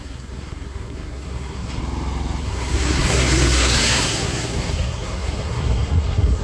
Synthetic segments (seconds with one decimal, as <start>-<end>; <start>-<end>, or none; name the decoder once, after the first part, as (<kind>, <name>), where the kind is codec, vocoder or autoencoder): 0.0-1.8 (codec, SNAC); 2.4-6.4